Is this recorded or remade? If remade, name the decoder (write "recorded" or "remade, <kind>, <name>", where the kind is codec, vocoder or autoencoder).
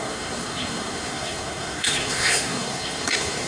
remade, codec, SNAC